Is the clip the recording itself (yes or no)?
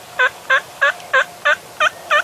yes